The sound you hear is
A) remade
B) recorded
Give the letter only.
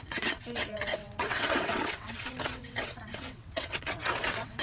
A